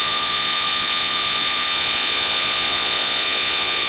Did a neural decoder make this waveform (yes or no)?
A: yes